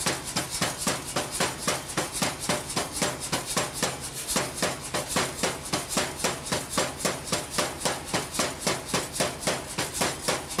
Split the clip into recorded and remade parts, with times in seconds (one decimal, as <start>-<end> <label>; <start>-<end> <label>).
0.0-10.6 recorded